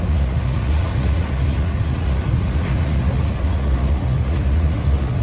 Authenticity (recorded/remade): remade